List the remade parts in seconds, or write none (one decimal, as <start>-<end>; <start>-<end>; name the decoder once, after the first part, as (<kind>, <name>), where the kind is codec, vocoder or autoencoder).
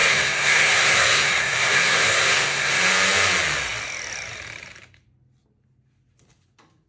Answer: 0.0-2.8 (codec, SNAC)